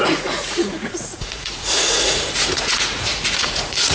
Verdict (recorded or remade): remade